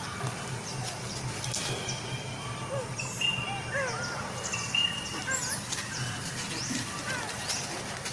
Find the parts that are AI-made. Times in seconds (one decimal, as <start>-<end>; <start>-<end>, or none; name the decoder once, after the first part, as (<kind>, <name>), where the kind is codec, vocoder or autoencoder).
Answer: none